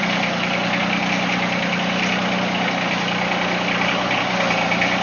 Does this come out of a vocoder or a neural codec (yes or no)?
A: no